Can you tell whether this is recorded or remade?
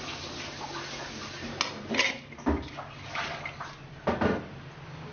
recorded